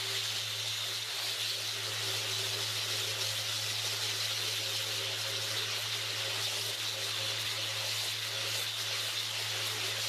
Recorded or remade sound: recorded